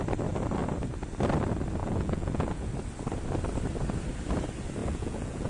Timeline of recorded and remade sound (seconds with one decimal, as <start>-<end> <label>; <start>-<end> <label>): 0.0-1.8 recorded; 1.8-2.7 remade; 2.7-4.8 recorded; 4.8-5.5 remade